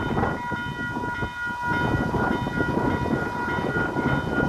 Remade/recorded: recorded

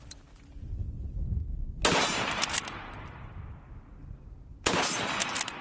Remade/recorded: recorded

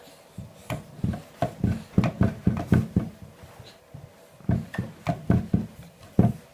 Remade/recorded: recorded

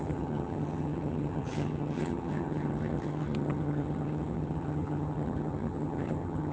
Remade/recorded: remade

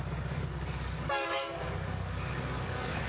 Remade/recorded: remade